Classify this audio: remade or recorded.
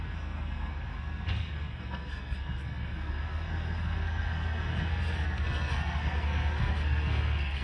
remade